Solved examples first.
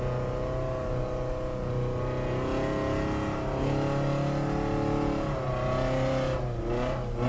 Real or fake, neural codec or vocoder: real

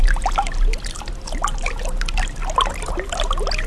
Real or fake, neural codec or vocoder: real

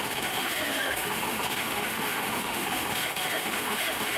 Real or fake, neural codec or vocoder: fake, autoencoder, DAC-VAE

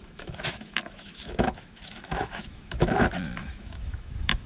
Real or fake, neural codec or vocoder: fake, autoencoder, DAC-VAE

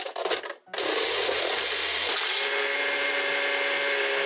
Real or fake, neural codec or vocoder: real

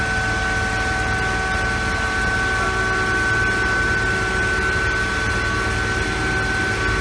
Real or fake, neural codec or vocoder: real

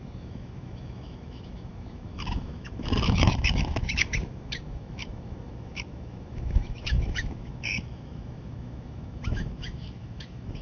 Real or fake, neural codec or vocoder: fake, autoencoder, DAC-VAE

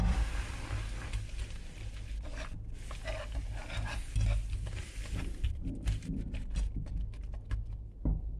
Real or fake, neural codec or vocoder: real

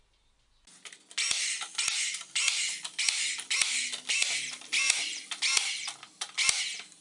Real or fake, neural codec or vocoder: real